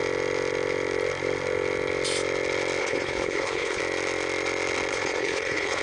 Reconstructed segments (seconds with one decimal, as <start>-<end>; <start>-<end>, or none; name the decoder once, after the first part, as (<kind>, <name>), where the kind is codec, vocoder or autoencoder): 2.8-3.8 (codec, HILCodec); 4.9-5.8